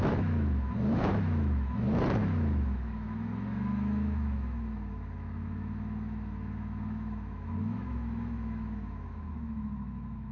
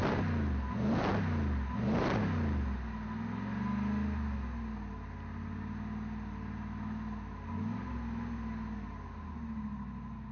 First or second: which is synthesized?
first